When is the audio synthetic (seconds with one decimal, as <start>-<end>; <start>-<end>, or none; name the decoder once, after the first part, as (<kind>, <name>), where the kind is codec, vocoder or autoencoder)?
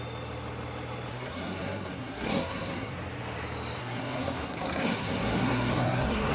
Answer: 1.1-2.9 (codec, SNAC); 3.8-6.3